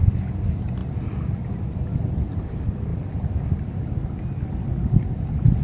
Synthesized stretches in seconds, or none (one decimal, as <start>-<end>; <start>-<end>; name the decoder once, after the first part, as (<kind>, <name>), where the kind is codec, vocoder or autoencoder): none